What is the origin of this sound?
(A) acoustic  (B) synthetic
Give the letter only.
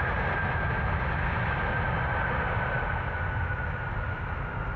A